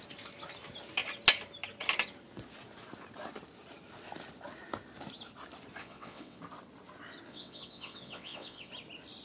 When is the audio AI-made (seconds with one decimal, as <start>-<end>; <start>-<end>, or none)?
5.8-6.4; 7.3-8.7

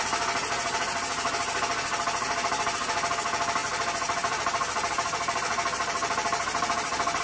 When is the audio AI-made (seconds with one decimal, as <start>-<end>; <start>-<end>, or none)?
3.6-7.2

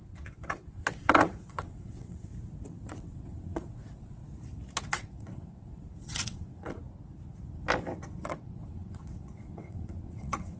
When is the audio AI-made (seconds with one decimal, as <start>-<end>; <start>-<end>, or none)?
0.0-2.3; 2.9-4.2; 4.9-6.8; 8.2-10.6

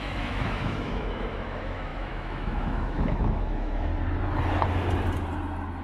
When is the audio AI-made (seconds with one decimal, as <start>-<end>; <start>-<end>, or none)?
0.0-3.9

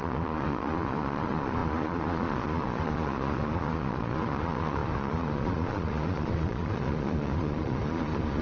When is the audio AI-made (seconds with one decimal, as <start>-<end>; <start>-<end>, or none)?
0.0-8.4

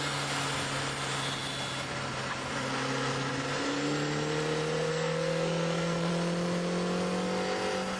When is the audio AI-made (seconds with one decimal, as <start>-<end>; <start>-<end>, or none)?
4.9-6.1

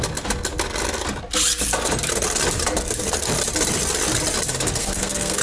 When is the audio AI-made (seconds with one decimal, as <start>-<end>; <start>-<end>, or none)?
4.8-5.4

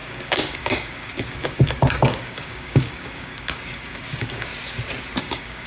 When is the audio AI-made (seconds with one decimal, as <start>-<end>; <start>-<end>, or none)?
0.0-4.5; 5.2-5.7